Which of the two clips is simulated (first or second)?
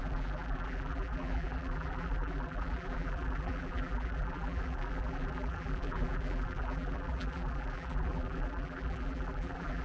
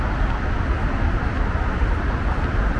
first